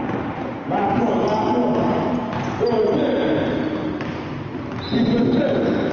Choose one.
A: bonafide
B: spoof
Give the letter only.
A